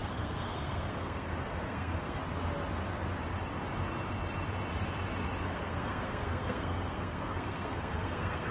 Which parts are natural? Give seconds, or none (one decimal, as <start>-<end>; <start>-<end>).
2.2-5.4